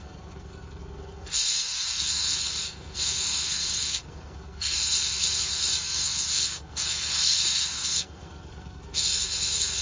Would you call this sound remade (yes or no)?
yes